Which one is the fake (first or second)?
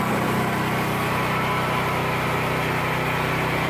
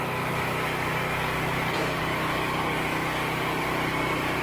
second